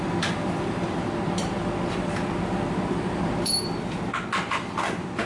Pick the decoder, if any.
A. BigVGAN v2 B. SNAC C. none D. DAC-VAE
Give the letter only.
A